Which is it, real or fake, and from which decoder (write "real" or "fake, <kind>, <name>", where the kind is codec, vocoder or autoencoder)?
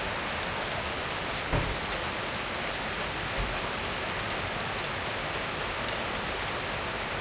real